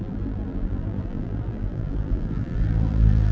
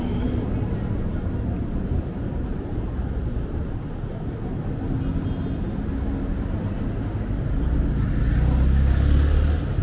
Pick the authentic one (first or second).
second